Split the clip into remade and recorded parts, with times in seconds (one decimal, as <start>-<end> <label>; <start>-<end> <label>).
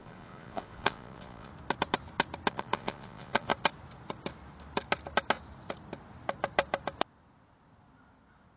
0.0-1.5 remade; 1.5-2.5 recorded; 2.5-3.5 remade; 3.5-8.6 recorded